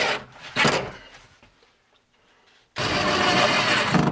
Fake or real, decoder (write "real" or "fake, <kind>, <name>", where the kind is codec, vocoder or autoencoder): real